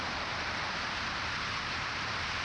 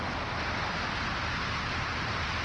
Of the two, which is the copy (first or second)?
first